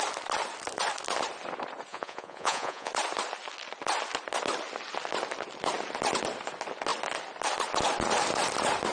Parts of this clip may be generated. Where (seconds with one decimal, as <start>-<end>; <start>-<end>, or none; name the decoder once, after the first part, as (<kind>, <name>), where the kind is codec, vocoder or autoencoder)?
1.9-2.9 (vocoder, Vocos)